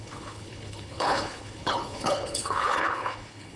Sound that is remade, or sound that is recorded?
remade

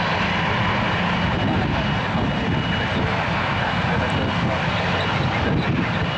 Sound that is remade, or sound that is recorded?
recorded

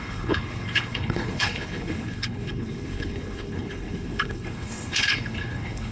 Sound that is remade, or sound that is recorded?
remade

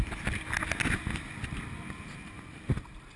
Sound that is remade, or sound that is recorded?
recorded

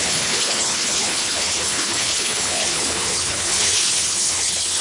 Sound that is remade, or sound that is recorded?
remade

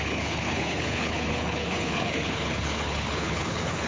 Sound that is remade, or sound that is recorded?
remade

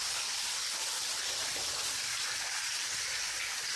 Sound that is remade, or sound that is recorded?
recorded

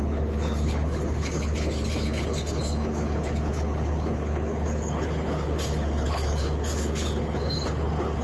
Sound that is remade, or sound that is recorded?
remade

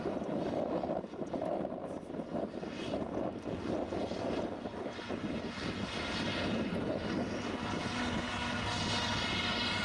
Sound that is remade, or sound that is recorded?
recorded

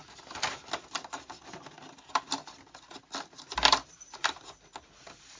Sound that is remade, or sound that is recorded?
recorded